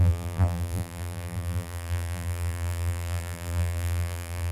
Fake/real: fake